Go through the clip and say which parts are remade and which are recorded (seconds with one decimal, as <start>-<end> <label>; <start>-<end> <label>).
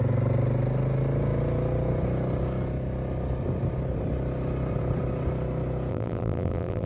0.0-5.9 recorded; 5.9-6.9 remade